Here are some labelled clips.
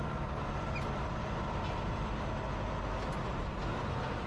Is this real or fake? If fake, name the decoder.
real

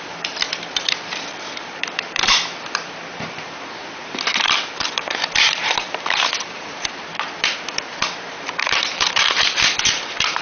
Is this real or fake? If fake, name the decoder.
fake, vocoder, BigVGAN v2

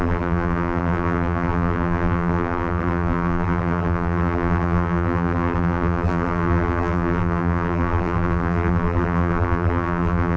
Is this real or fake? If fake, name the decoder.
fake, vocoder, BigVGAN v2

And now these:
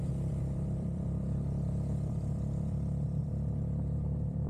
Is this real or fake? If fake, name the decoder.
fake, vocoder, BigVGAN v2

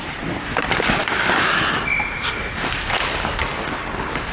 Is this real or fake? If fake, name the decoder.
fake, vocoder, BigVGAN v2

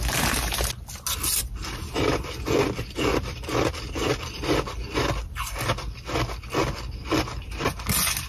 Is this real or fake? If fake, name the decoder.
real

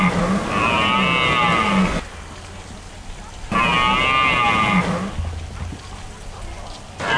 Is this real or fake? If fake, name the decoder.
real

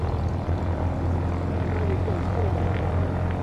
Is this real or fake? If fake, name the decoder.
fake, vocoder, BigVGAN v2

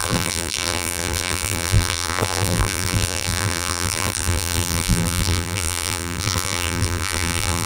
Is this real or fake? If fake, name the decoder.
fake, vocoder, BigVGAN v2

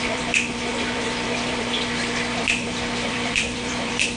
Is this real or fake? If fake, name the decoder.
fake, vocoder, BigVGAN v2